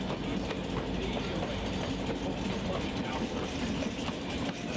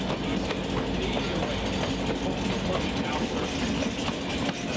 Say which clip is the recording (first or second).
second